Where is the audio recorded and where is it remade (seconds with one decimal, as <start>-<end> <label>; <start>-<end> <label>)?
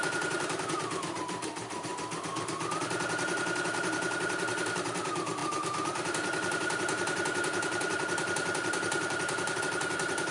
0.0-1.9 remade; 1.9-2.8 recorded; 2.8-10.3 remade